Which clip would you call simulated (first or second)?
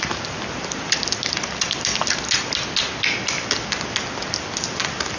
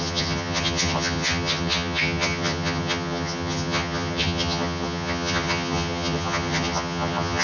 second